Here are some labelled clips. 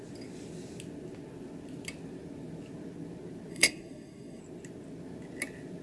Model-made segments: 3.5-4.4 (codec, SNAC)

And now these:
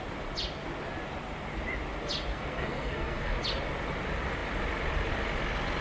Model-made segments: 2.3-3.4 (codec, SNAC)

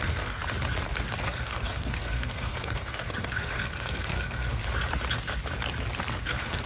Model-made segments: 0.0-0.4 (codec, SNAC); 1.2-4.6; 6.2-6.7

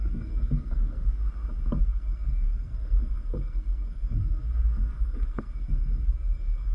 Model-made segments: 0.0-1.2 (codec, SNAC); 1.8-6.7

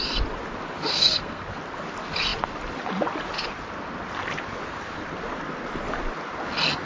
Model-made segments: 0.9-1.4 (codec, SNAC)

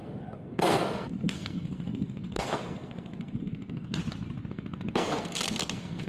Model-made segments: 0.0-4.0 (codec, SNAC); 4.5-6.1

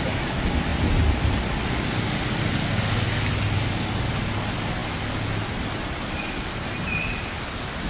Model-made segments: none

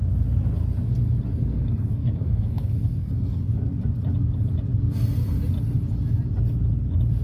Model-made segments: 1.4-3.1 (codec, SNAC)